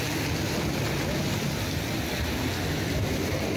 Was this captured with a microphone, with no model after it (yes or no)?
yes